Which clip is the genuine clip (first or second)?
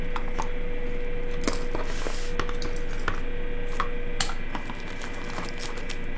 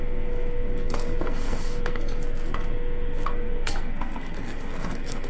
first